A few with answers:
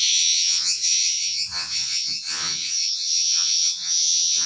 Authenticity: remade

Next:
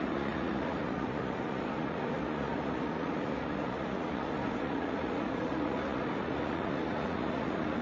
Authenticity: remade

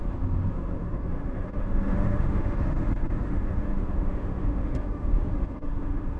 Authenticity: remade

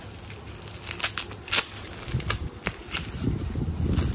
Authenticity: recorded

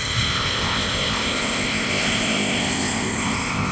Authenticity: remade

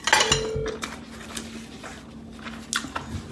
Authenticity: recorded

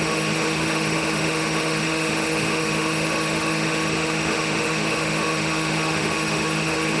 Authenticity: remade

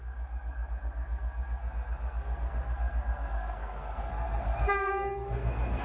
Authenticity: remade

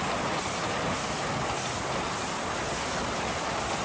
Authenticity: recorded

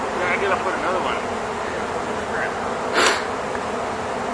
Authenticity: recorded